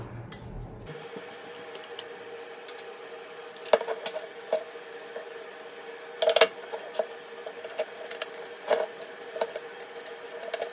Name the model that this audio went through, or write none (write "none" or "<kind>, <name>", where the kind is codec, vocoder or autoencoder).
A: none